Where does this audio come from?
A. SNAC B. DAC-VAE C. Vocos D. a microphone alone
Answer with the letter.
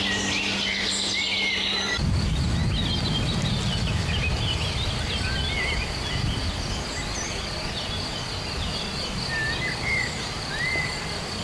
D